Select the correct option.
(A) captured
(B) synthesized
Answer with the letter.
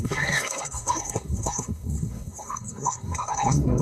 B